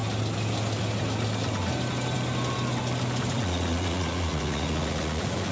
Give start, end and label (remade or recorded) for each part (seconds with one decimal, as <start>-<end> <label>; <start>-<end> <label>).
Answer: 0.0-3.3 recorded; 3.3-5.5 remade